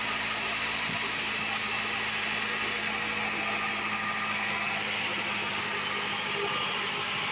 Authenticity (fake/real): real